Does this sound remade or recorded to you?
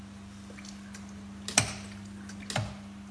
recorded